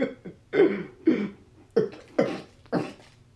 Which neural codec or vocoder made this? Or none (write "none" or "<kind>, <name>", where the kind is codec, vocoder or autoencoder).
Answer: none